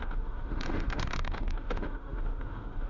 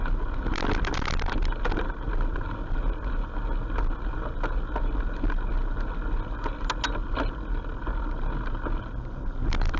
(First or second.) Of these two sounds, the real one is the second